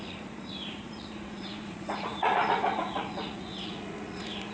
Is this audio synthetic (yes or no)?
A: yes